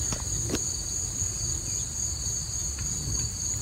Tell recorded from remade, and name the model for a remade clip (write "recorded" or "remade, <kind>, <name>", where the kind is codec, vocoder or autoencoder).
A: recorded